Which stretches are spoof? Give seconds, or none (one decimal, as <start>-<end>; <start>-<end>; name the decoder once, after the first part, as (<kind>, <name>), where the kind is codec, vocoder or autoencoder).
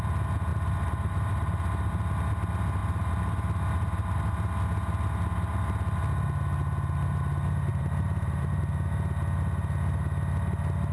0.5-1.9 (vocoder, BigVGAN v2); 2.8-4.3; 7.7-8.6